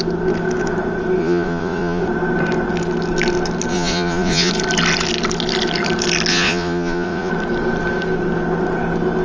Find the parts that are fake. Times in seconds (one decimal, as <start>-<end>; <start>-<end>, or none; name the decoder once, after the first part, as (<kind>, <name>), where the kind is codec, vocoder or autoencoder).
1.2-2.0 (vocoder, Vocos); 3.7-4.5; 6.3-7.3